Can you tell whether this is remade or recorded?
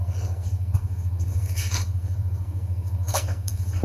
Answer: remade